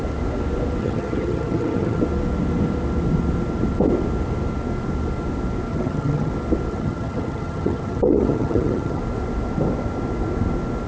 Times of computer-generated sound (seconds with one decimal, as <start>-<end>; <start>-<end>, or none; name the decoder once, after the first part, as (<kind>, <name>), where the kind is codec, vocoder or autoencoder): 0.8-2.0 (vocoder, HiFi-GAN); 5.7-6.3; 6.7-9.0